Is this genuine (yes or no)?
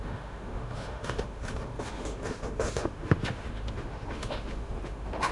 no